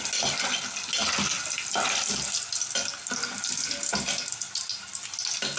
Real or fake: real